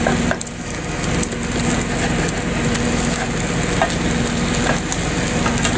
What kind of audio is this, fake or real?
real